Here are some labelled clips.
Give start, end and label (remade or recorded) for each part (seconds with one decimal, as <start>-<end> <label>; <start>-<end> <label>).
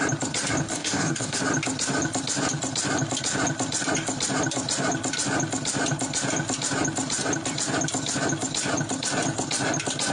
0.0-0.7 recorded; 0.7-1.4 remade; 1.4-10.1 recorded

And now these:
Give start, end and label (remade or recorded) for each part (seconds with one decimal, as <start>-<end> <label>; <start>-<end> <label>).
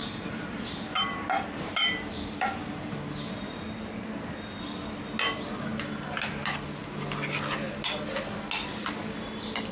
0.0-3.6 remade; 3.6-9.7 recorded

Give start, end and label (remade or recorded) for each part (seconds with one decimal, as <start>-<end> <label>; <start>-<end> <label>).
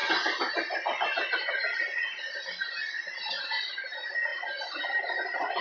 0.0-5.6 recorded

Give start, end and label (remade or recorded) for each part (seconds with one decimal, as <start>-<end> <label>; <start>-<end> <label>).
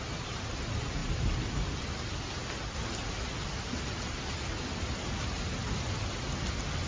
0.0-6.9 recorded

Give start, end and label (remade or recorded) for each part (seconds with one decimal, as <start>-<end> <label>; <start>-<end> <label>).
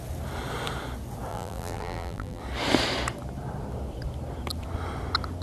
0.0-1.3 recorded; 1.3-2.4 remade; 2.4-5.4 recorded